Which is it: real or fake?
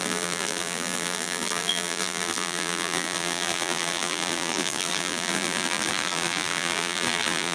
fake